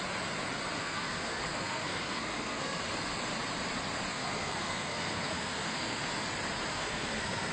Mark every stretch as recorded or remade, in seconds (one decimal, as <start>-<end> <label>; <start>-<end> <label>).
0.0-0.8 recorded; 0.8-2.8 remade; 2.8-4.1 recorded; 4.1-6.0 remade; 6.0-6.7 recorded; 6.7-7.5 remade